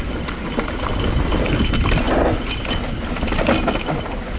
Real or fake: real